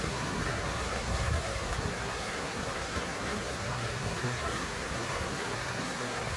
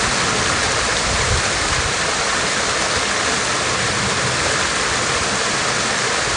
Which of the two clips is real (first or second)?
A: second